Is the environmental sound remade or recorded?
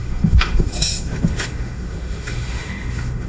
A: remade